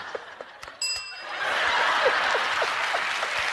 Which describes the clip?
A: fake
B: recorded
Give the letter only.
B